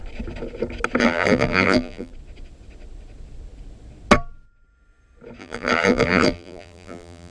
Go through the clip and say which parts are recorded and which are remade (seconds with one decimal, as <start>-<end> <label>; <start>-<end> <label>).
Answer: 0.0-1.0 recorded; 1.0-2.1 remade; 2.1-5.4 recorded; 5.4-7.3 remade